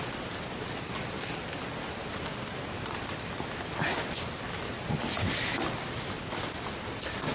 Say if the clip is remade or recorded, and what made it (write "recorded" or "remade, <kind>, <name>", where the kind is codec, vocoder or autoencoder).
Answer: remade, vocoder, BigVGAN v2